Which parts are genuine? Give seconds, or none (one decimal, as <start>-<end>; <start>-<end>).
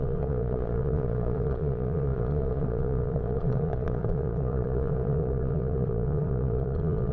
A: none